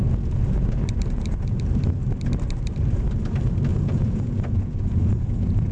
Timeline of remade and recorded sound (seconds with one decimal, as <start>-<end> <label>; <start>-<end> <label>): 0.0-3.7 recorded; 3.7-5.7 remade

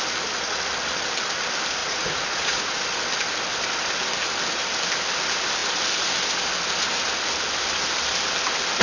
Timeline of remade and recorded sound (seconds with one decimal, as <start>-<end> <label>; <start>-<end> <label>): 0.0-1.8 recorded; 1.8-2.8 remade; 2.8-8.8 recorded